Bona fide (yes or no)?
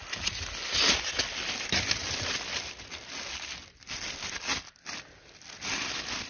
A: yes